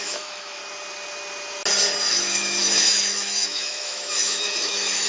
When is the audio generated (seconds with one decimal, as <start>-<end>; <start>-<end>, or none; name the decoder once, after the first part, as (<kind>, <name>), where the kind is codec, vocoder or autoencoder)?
0.0-0.6 (autoencoder, DAC-VAE); 2.1-5.1